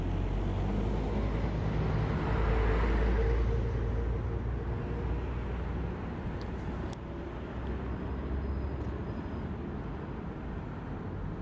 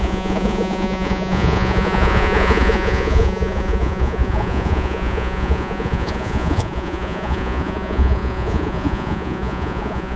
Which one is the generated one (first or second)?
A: second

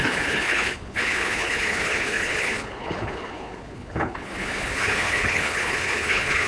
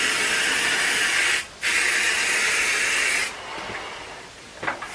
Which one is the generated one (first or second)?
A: first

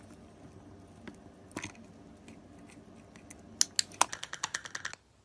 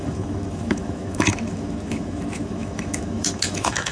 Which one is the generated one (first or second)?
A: second